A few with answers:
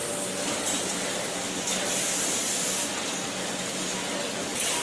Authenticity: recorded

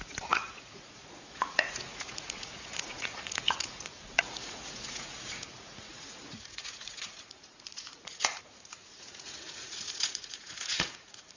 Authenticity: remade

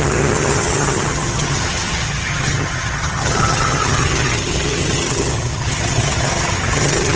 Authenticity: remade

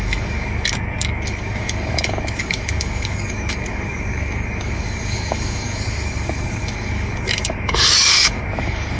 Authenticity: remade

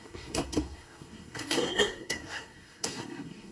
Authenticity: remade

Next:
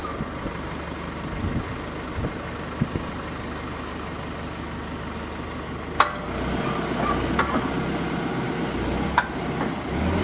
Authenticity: recorded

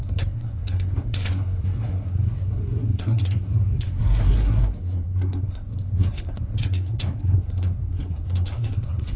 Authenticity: remade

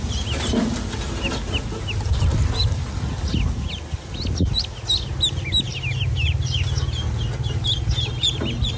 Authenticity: recorded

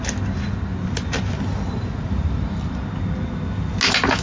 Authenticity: recorded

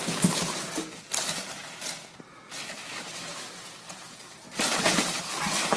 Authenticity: recorded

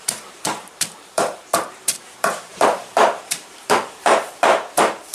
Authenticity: remade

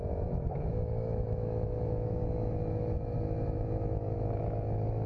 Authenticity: remade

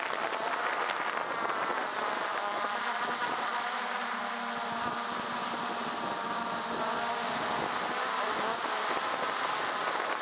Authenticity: recorded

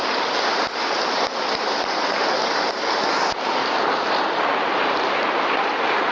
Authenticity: recorded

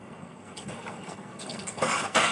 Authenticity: remade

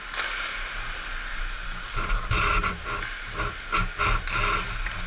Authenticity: recorded